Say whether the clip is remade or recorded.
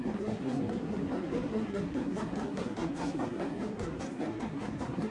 remade